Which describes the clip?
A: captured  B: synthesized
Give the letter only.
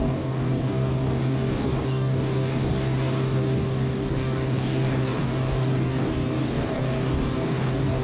B